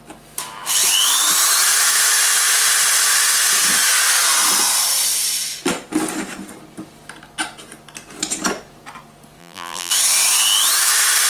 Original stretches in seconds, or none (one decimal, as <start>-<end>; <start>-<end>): 0.0-9.4; 9.9-11.3